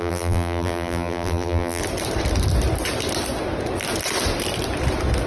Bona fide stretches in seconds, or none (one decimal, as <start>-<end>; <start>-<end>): 1.8-5.3